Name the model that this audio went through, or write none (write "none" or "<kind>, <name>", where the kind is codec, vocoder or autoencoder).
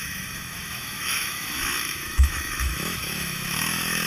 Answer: autoencoder, DAC-VAE